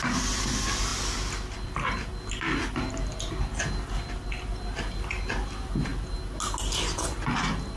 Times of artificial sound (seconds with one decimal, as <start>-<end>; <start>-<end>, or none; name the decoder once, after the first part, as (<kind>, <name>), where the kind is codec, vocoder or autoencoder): none